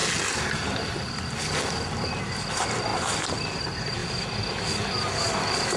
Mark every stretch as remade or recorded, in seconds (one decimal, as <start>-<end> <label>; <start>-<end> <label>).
0.0-4.0 recorded; 4.0-5.8 remade